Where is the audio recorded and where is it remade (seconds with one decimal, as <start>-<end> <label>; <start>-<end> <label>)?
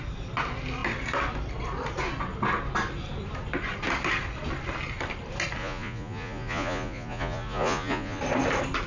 0.0-5.6 recorded; 5.6-8.2 remade; 8.2-8.9 recorded